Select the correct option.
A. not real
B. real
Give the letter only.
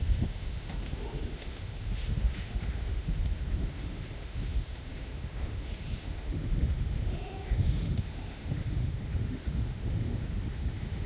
A